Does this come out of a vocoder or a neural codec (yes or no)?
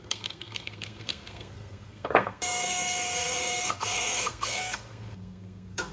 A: yes